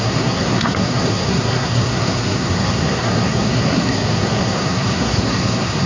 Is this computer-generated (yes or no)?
yes